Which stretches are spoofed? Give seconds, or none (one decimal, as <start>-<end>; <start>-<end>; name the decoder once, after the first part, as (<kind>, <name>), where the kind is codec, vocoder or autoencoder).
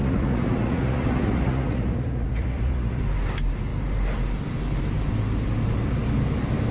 0.0-3.0 (vocoder, Vocos)